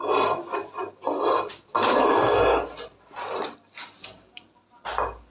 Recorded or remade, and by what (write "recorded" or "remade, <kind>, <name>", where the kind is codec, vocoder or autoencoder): recorded